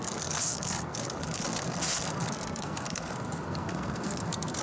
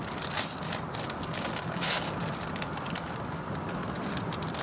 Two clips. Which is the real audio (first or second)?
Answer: second